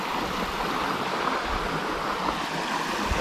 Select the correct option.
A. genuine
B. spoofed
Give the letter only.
A